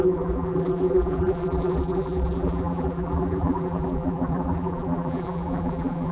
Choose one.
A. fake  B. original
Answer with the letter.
A